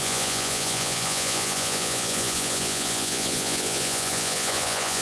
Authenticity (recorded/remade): remade